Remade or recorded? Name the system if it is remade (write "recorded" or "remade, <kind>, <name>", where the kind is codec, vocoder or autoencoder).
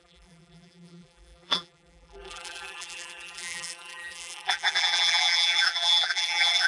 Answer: remade, vocoder, BigVGAN v2